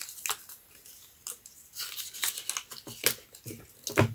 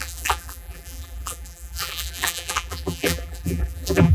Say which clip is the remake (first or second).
second